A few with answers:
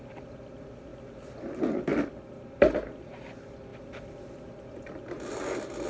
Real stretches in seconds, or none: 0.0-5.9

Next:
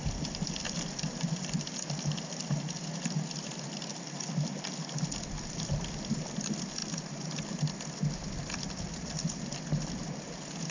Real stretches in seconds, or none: 0.0-10.7

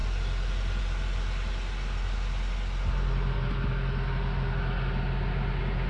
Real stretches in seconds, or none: 0.0-5.9

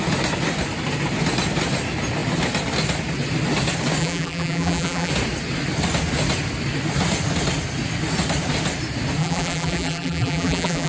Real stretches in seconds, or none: 0.0-4.0; 5.1-9.2

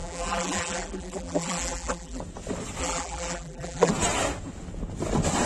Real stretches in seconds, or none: 2.2-2.8; 3.9-5.5

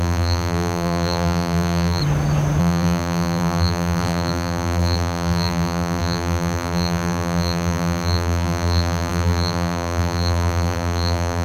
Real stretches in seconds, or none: 2.0-2.6